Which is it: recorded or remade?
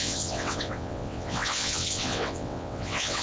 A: remade